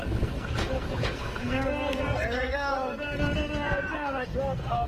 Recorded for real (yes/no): no